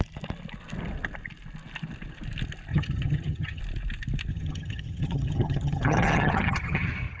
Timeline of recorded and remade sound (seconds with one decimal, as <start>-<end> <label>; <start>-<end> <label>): 0.0-2.7 recorded; 2.7-3.6 remade; 3.6-4.3 recorded; 4.3-7.2 remade